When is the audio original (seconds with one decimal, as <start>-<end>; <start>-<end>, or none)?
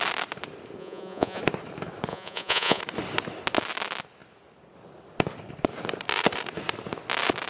0.0-0.8; 1.4-2.1; 2.8-7.5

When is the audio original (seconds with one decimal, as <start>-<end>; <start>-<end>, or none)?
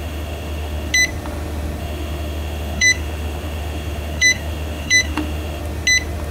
0.9-1.8; 5.6-6.3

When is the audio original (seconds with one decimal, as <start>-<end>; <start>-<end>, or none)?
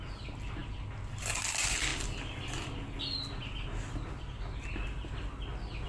0.0-5.9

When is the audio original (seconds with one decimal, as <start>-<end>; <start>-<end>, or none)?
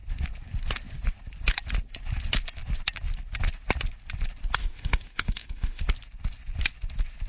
0.0-4.6; 5.8-7.3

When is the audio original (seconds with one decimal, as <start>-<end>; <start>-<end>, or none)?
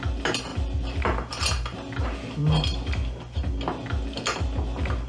0.0-5.1